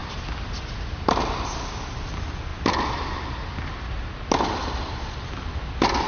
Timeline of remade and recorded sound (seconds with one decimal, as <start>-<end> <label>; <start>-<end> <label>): 0.0-6.1 recorded